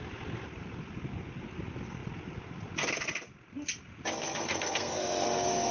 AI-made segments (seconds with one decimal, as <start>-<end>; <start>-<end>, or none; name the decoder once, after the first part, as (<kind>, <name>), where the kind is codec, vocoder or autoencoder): 4.2-5.7 (codec, SNAC)